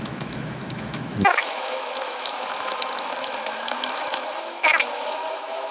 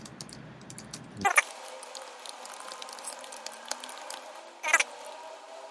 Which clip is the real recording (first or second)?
second